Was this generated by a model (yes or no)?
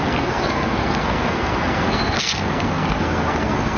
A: yes